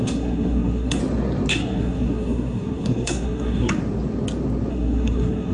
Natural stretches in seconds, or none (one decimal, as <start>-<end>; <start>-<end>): 1.0-1.5; 3.8-4.7